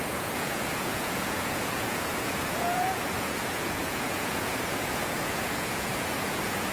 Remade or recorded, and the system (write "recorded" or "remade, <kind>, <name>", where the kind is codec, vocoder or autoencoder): remade, vocoder, Vocos